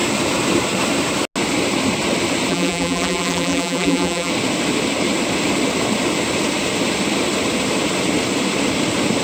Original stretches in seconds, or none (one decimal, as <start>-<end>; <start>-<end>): 0.0-2.5; 4.3-9.2